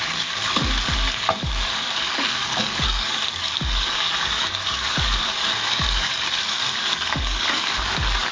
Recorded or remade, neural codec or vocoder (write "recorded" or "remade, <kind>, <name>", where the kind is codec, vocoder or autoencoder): remade, codec, DAC